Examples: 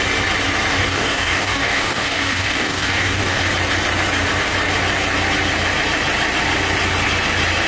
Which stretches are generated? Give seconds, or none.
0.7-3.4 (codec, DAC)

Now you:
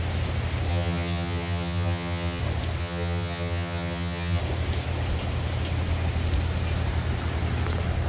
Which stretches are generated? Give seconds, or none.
0.7-2.4 (vocoder, HiFi-GAN); 2.8-4.4

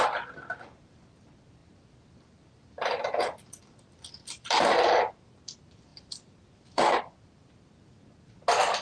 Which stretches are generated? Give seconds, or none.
1.6-5.3 (vocoder, BigVGAN v2); 5.9-7.0